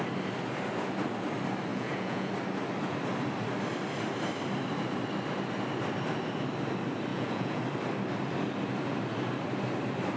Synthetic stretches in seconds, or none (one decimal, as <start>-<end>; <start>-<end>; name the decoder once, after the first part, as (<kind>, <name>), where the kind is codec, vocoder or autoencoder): 1.7-2.3 (vocoder, Vocos); 7.1-7.6